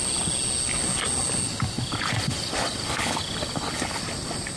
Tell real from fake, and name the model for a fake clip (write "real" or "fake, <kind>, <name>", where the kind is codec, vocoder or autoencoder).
real